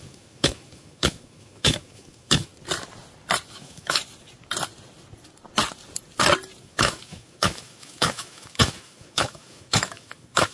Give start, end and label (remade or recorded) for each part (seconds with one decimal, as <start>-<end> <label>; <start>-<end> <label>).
0.0-2.5 remade; 2.5-3.5 recorded; 3.5-4.0 remade; 4.0-6.6 recorded; 6.6-10.5 remade